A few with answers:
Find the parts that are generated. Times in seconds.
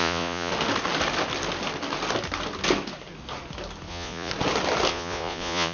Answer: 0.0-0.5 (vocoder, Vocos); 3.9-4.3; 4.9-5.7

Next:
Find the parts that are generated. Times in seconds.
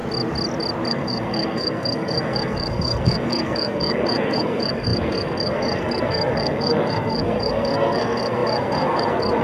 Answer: 0.9-9.4 (codec, SNAC)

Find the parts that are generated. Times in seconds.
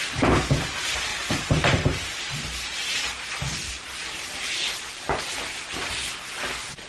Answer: 1.1-5.2 (vocoder, BigVGAN v2)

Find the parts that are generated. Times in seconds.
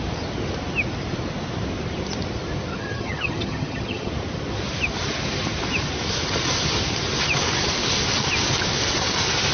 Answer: 2.7-4.1 (vocoder, HiFi-GAN)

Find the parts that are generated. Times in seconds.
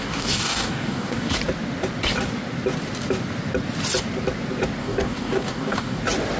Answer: 0.0-1.3 (codec, DAC); 4.8-6.0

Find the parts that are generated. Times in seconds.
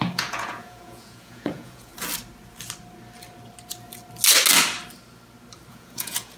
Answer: 0.0-1.9 (vocoder, Vocos); 5.7-6.4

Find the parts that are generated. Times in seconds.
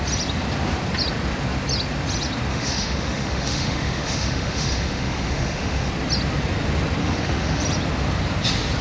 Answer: 2.5-5.9 (autoencoder, DAC-VAE); 7.0-7.6